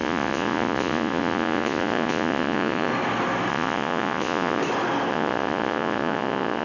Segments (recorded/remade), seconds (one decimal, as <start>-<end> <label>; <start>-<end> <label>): 0.0-2.9 remade; 2.9-3.5 recorded; 3.5-4.6 remade; 4.6-5.1 recorded; 5.1-6.6 remade